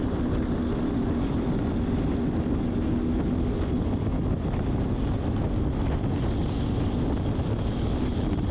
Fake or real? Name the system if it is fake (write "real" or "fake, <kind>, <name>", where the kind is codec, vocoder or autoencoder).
real